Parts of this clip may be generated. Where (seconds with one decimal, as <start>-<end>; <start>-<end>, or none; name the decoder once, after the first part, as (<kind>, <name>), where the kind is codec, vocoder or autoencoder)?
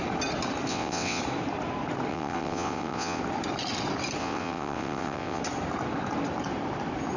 0.7-1.2 (vocoder, WaveNeXt); 2.1-3.2; 4.2-5.4